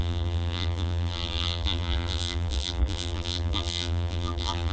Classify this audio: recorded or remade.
remade